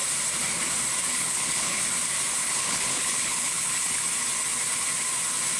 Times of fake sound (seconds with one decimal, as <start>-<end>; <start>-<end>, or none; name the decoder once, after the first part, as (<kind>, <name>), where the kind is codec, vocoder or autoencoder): 1.1-1.8 (codec, HILCodec); 2.4-4.0